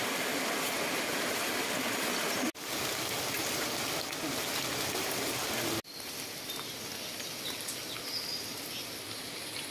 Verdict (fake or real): real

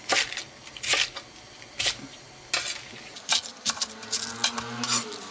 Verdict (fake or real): real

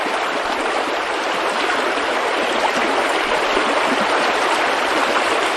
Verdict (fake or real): fake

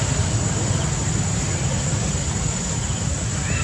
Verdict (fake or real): fake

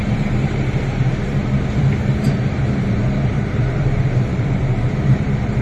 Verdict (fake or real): fake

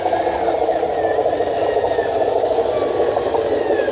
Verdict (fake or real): real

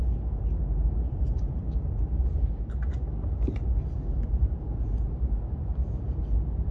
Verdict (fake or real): fake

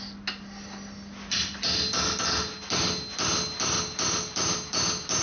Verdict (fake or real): real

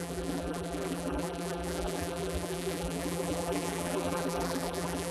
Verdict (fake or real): fake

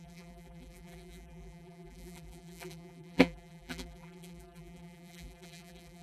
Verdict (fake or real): fake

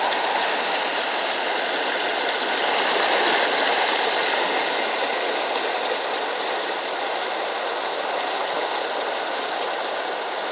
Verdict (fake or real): real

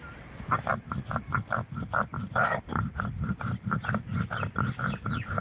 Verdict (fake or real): real